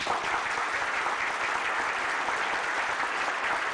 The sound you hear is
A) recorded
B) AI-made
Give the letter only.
A